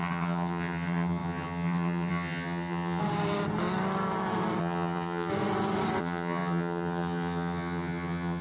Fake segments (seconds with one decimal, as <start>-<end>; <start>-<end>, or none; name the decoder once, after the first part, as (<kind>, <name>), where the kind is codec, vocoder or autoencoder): 0.0-3.0 (vocoder, HiFi-GAN); 4.6-5.3; 6.0-8.4

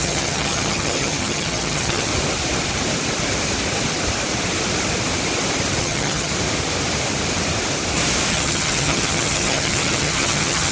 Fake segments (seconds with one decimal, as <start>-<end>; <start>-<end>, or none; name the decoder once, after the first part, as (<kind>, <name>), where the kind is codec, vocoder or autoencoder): 0.0-2.1 (vocoder, HiFi-GAN); 5.8-6.3; 8.3-10.7

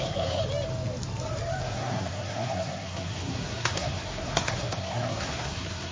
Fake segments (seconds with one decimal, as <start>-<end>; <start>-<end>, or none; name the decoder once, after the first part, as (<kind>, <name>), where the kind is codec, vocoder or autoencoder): 0.0-0.4 (codec, SNAC); 1.6-5.9

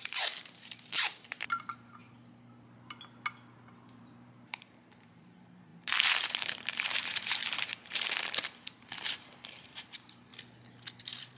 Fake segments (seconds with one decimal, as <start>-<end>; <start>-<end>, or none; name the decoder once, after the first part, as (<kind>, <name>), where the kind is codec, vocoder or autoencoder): 0.0-2.0 (vocoder, BigVGAN v2); 3.9-10.3; 11.0-11.4

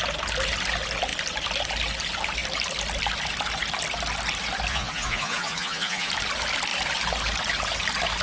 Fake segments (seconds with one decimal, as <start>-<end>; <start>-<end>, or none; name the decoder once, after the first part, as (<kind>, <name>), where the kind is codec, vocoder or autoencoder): 4.7-6.1 (vocoder, Vocos)

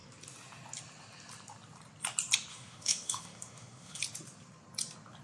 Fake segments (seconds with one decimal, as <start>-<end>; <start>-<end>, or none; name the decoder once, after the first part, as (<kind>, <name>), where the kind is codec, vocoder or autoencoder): 2.5-4.0 (autoencoder, DAC-VAE)

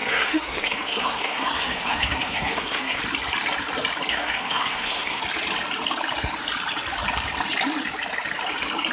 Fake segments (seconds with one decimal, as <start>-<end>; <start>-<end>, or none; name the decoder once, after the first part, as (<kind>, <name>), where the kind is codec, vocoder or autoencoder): 0.0-3.0 (codec, SNAC); 4.1-5.2

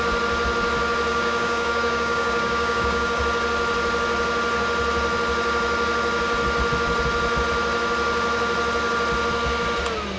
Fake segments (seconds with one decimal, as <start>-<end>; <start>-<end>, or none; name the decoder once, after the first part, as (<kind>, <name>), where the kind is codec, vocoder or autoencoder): 1.1-3.2 (codec, DAC)